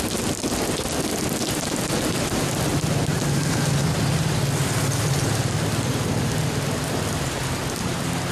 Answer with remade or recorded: recorded